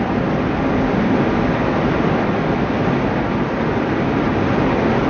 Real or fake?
real